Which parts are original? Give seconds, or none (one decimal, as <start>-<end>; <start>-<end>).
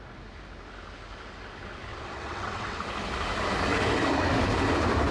0.0-1.9; 2.8-5.1